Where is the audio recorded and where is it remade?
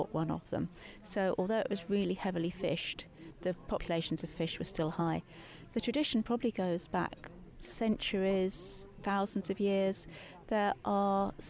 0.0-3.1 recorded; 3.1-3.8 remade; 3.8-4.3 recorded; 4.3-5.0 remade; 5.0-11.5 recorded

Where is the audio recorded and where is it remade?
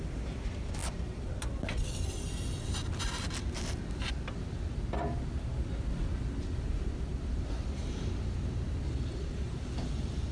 0.0-10.3 recorded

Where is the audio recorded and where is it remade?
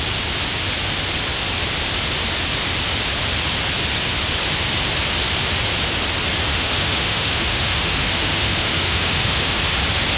0.0-6.5 recorded; 6.5-9.6 remade; 9.6-10.2 recorded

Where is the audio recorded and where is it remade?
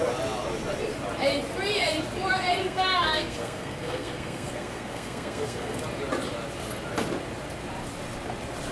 0.0-2.6 recorded; 2.6-5.8 remade; 5.8-8.7 recorded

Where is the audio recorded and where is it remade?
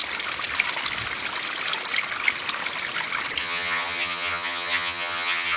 0.0-3.4 recorded; 3.4-5.6 remade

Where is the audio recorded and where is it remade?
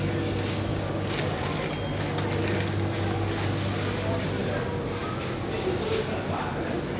0.0-0.7 recorded; 0.7-1.4 remade; 1.4-7.0 recorded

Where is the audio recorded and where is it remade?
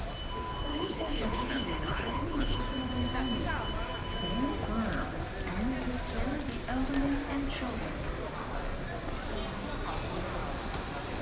0.0-0.7 recorded; 0.7-2.6 remade; 2.6-11.2 recorded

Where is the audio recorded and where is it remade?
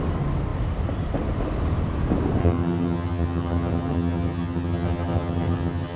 0.0-2.4 recorded; 2.4-6.0 remade